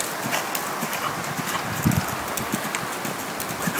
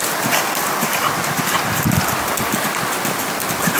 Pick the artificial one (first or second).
second